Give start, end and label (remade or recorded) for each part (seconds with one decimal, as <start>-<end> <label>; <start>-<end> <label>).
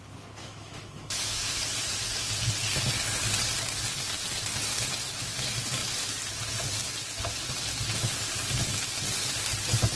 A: 0.0-0.4 recorded; 0.4-1.6 remade; 1.6-10.0 recorded